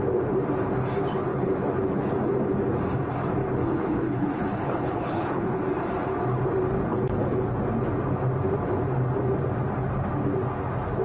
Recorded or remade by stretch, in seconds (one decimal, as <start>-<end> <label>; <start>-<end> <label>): 0.0-1.3 recorded; 1.3-2.1 remade; 2.1-3.4 recorded; 3.4-5.6 remade; 5.6-6.9 recorded; 6.9-7.5 remade; 7.5-11.0 recorded